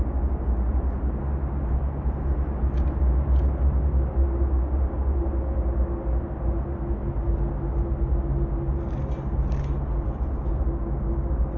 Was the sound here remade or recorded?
recorded